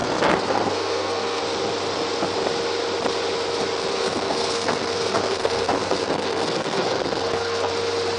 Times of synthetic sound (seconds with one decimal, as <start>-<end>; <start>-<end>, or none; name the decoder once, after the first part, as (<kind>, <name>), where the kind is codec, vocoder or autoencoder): 0.0-1.4 (codec, SNAC); 3.9-7.7